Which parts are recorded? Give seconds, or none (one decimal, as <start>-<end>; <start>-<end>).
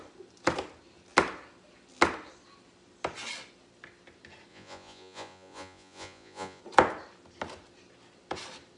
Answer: 0.0-4.5; 6.6-8.8